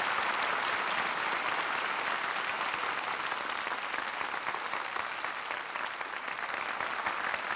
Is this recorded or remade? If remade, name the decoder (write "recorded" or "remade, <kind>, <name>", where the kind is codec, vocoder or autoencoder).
recorded